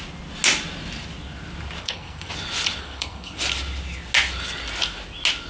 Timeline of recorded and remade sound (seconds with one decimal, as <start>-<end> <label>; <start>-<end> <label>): 0.0-1.8 recorded; 1.8-2.3 remade; 2.3-2.8 recorded; 2.8-3.4 remade; 3.4-5.5 recorded